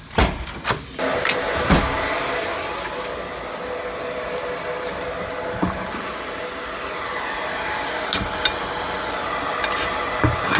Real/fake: real